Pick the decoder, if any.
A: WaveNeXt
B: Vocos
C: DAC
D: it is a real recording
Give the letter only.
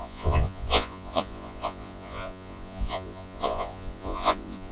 B